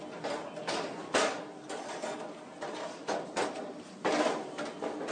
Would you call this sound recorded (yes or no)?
yes